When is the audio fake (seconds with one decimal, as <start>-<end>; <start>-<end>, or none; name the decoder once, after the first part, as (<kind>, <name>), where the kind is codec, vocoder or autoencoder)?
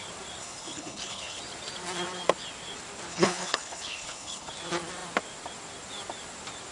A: 0.4-1.4 (codec, HILCodec); 3.1-4.5